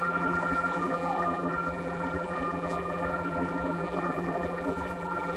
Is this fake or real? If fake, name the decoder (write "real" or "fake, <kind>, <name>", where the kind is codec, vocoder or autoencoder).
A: fake, vocoder, BigVGAN v2